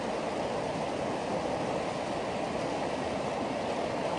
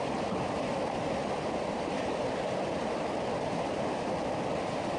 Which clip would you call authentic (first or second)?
first